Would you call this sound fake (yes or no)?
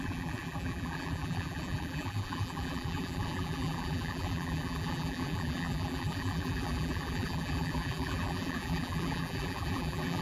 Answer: yes